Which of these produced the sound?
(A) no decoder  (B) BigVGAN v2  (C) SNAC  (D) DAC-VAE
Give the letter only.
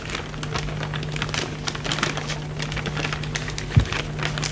A